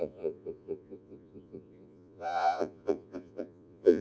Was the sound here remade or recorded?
remade